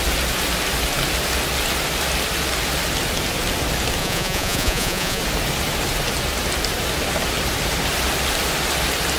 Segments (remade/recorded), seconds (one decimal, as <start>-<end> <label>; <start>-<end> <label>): 0.0-4.0 recorded; 4.0-5.2 remade; 5.2-9.2 recorded